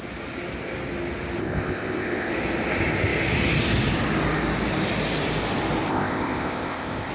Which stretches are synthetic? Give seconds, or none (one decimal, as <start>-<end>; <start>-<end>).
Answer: 1.4-2.3; 5.9-7.1